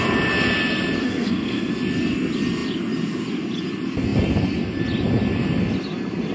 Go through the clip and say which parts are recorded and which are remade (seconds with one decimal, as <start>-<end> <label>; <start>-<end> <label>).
0.0-1.0 recorded; 1.0-1.7 remade; 1.7-6.3 recorded